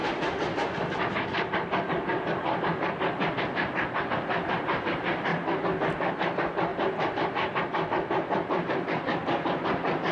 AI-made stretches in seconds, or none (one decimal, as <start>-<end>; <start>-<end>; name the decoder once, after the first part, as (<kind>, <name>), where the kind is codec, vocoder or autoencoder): 0.0-5.3 (vocoder, BigVGAN v2); 5.8-10.1